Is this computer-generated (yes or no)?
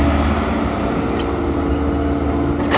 no